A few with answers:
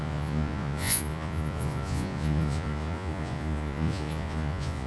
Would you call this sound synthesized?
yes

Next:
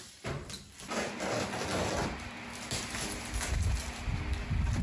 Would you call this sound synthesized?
no